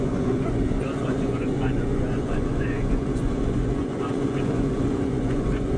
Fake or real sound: fake